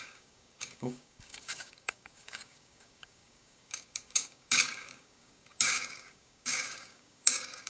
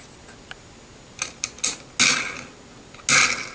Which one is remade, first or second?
first